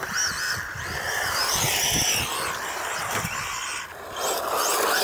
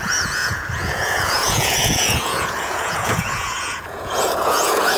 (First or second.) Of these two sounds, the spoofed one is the second